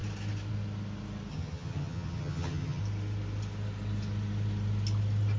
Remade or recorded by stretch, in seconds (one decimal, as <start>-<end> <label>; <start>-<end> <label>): 0.0-1.3 recorded; 1.3-2.8 remade; 2.8-5.4 recorded